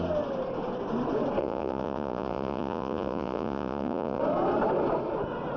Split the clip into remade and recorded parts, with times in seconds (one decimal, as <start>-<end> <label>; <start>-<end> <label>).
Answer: 0.0-1.4 recorded; 1.4-4.2 remade; 4.2-5.6 recorded